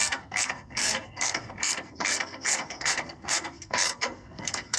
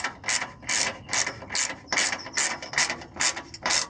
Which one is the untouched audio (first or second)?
second